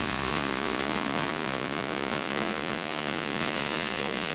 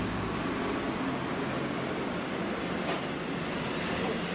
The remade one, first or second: first